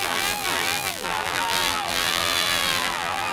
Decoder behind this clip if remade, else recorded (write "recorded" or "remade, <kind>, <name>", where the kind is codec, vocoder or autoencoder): remade, vocoder, BigVGAN v2